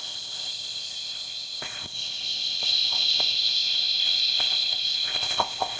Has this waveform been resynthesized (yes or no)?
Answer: yes